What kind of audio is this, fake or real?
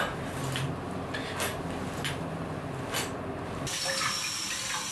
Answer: real